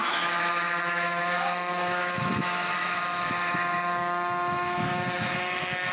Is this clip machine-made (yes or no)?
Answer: yes